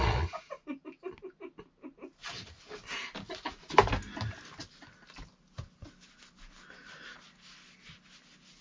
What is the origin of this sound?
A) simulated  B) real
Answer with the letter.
B